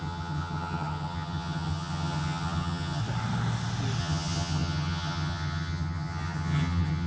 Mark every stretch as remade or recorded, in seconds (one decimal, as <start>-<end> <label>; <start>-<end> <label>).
0.0-3.0 remade; 3.0-4.0 recorded; 4.0-7.1 remade